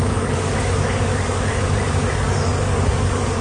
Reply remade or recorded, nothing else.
remade